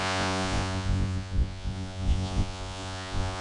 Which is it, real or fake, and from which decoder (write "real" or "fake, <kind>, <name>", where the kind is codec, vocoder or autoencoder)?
fake, vocoder, Vocos